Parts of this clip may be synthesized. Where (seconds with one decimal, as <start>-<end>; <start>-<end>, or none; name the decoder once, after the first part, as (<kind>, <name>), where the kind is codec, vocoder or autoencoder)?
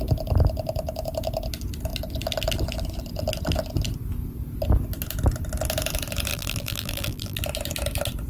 6.3-7.4 (vocoder, BigVGAN v2)